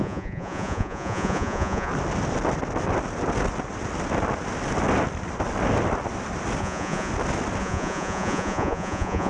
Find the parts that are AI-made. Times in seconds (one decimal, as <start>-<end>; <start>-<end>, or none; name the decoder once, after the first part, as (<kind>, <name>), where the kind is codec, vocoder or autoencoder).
0.0-1.9 (vocoder, Vocos); 6.6-7.1; 7.6-9.3